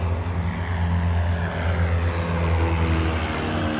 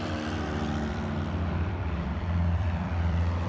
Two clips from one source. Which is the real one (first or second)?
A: first